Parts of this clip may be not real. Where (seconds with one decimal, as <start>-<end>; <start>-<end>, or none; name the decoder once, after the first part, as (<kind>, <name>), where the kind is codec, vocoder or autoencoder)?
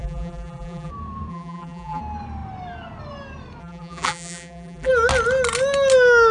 0.0-0.9 (vocoder, BigVGAN v2); 1.3-2.0; 3.6-4.9